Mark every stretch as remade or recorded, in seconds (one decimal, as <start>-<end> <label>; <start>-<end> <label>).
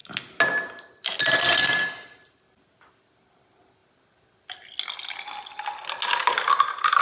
0.0-7.0 recorded